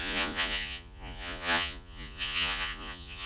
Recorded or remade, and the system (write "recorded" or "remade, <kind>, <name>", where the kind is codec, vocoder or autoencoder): remade, vocoder, Vocos